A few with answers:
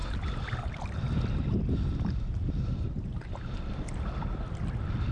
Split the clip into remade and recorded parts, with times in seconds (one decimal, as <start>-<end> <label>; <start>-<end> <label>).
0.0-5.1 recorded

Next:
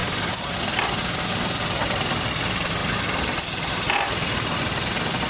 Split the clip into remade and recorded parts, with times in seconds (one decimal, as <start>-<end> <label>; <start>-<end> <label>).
0.0-5.3 recorded

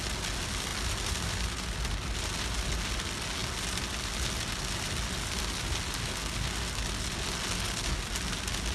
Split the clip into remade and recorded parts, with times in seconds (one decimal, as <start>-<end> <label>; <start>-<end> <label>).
0.0-8.7 recorded

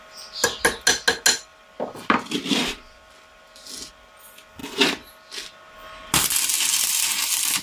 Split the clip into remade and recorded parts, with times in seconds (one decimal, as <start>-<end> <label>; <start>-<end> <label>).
0.0-1.5 recorded; 1.5-3.9 remade; 3.9-7.6 recorded